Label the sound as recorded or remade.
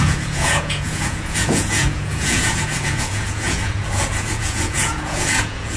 remade